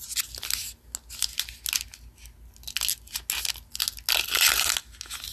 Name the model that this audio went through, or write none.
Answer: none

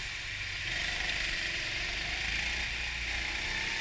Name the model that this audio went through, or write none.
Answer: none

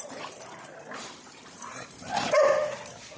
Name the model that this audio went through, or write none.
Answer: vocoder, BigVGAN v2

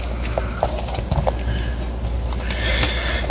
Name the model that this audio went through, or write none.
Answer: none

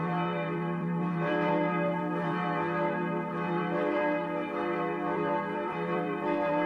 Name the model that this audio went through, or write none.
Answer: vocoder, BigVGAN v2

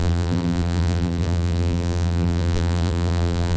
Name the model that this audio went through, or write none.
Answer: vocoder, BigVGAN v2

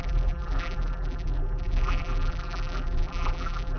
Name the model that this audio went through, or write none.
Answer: vocoder, BigVGAN v2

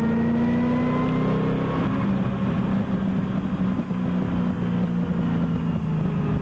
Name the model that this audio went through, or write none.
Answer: none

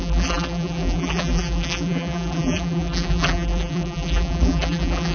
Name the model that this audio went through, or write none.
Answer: vocoder, BigVGAN v2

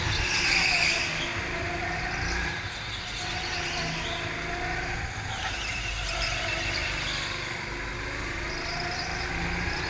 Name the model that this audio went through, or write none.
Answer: none